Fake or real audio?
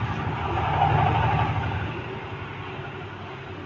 real